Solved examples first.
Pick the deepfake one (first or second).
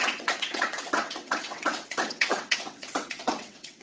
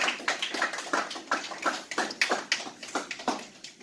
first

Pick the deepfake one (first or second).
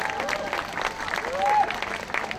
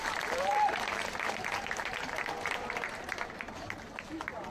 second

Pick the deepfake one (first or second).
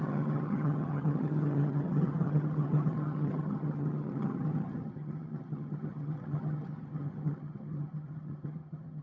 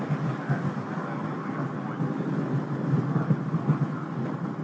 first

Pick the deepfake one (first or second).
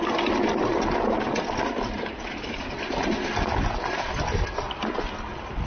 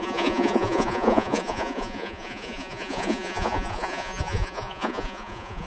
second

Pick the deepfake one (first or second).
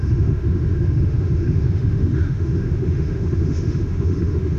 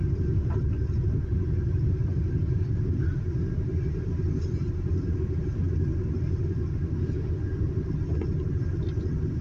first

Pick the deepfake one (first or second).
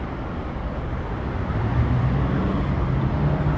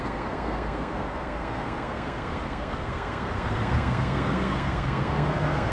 second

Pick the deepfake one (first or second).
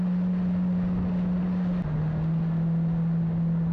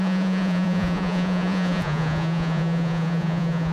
second